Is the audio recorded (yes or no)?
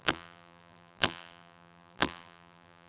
no